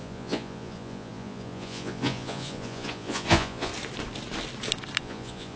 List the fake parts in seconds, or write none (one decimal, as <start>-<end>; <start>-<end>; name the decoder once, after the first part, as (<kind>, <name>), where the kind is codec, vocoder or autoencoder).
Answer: 0.0-3.7 (vocoder, Vocos); 5.0-5.6